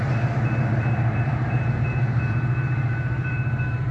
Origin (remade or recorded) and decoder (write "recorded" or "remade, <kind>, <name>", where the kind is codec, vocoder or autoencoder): remade, vocoder, BigVGAN v2